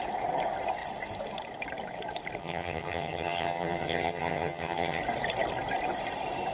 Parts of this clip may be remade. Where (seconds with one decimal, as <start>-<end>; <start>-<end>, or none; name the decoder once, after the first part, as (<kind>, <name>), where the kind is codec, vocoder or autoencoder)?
2.4-5.0 (vocoder, HiFi-GAN)